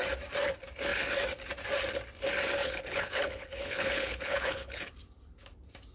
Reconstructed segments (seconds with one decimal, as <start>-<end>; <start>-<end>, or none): 2.6-4.9